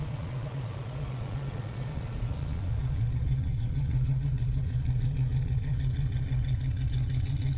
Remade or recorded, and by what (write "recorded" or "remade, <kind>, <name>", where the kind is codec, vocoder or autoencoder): remade, vocoder, Vocos